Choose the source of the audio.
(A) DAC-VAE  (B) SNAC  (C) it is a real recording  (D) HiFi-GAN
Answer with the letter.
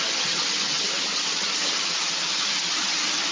D